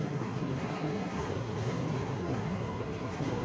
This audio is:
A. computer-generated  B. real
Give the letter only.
A